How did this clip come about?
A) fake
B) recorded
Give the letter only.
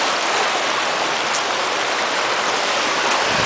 B